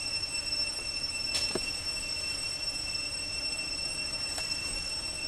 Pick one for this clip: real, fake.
real